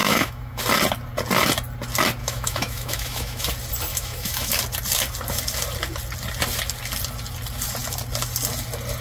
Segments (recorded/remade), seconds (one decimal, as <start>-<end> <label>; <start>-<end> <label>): 0.0-0.6 remade; 0.6-2.2 recorded; 2.2-3.5 remade; 3.5-3.9 recorded; 3.9-4.6 remade; 4.6-9.0 recorded